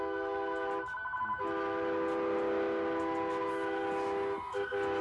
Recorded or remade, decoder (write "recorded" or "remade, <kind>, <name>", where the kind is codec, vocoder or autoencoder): recorded